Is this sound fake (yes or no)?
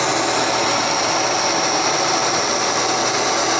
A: no